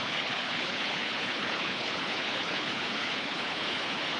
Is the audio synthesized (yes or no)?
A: yes